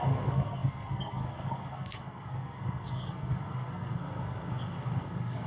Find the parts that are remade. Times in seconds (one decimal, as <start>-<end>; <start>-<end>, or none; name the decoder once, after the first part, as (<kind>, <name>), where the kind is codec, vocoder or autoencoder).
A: 0.0-5.5 (codec, SNAC)